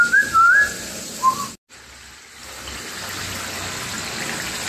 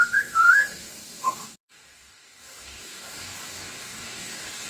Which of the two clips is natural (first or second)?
first